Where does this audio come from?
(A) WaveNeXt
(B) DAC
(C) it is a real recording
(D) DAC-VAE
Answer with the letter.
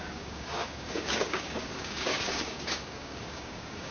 B